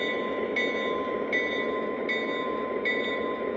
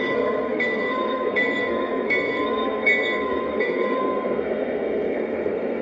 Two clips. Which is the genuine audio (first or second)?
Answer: first